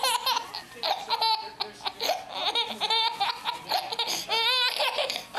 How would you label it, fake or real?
real